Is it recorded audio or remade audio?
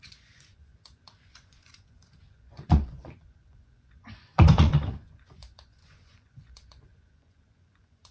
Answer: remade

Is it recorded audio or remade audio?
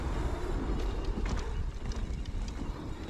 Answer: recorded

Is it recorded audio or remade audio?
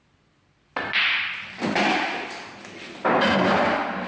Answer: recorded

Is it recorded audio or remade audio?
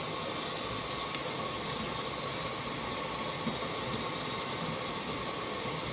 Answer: recorded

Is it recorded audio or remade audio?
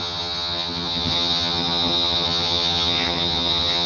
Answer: remade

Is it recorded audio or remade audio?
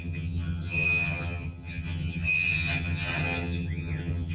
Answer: remade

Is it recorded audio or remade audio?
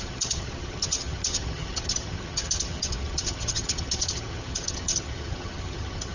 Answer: remade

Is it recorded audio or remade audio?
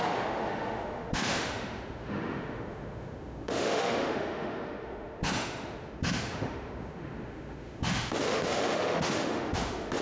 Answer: remade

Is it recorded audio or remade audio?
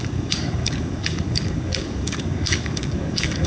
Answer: remade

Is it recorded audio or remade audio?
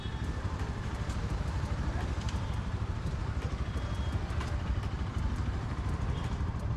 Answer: remade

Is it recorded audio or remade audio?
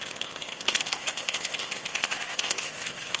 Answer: remade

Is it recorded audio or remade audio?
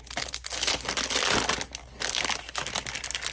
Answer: recorded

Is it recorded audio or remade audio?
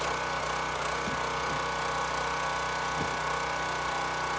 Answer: recorded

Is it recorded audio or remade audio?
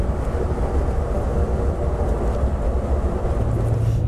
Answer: recorded